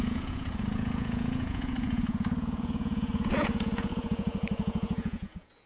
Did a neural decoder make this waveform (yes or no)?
yes